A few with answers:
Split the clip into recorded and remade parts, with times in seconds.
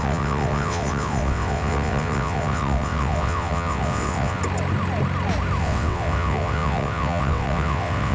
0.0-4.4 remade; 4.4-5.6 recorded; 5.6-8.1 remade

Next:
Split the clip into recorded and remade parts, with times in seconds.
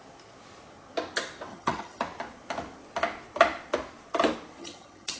0.0-1.5 recorded; 1.5-2.0 remade; 2.0-4.6 recorded; 4.6-5.2 remade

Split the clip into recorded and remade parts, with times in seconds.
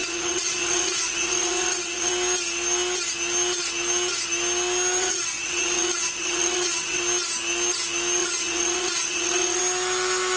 0.0-2.1 remade; 2.1-5.0 recorded; 5.0-7.0 remade; 7.0-8.2 recorded; 8.2-9.6 remade; 9.6-10.4 recorded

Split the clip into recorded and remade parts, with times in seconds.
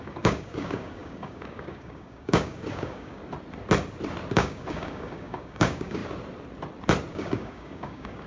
0.0-3.2 remade; 3.2-4.3 recorded; 4.3-6.0 remade; 6.0-7.1 recorded; 7.1-8.3 remade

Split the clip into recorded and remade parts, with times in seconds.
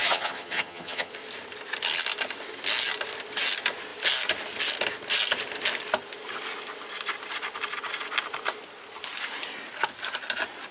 0.0-1.1 remade; 1.1-10.7 recorded